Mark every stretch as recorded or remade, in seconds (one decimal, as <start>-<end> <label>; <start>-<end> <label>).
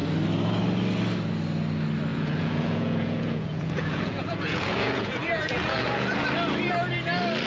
0.0-2.1 recorded; 2.1-6.2 remade; 6.2-7.5 recorded